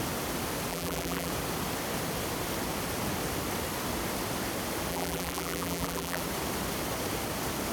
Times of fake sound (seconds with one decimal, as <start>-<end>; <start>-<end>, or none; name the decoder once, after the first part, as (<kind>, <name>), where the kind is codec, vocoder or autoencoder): 0.7-1.3 (vocoder, BigVGAN v2); 4.9-6.2